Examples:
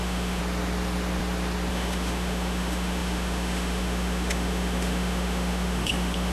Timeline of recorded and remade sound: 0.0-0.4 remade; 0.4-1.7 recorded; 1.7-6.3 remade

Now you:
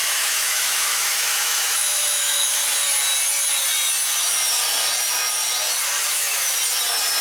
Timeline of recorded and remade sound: 0.0-2.6 remade; 2.6-6.1 recorded; 6.1-6.5 remade; 6.5-7.2 recorded

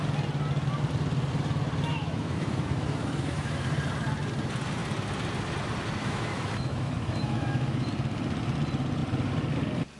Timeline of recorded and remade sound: 0.0-1.9 recorded; 1.9-3.7 remade; 3.7-6.0 recorded; 6.0-7.9 remade; 7.9-10.0 recorded

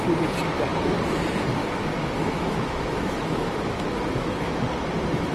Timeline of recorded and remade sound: 0.0-1.6 recorded; 1.6-4.6 remade; 4.6-5.3 recorded

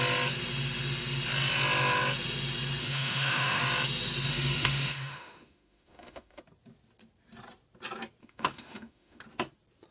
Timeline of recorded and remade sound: 0.0-2.8 recorded; 2.8-3.6 remade; 3.6-4.3 recorded; 4.3-6.4 remade; 6.4-8.2 recorded; 8.2-9.2 remade; 9.2-9.9 recorded

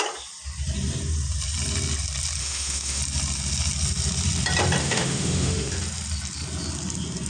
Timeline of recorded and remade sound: 0.0-2.4 recorded; 2.4-3.0 remade; 3.0-4.8 recorded; 4.8-5.7 remade; 5.7-7.3 recorded

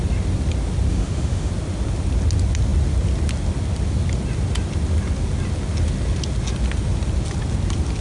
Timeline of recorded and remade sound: 0.0-0.9 recorded; 0.9-1.5 remade; 1.5-8.0 recorded